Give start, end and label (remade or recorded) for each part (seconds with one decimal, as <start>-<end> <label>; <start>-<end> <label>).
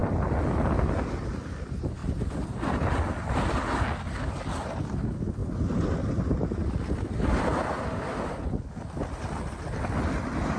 0.0-10.6 recorded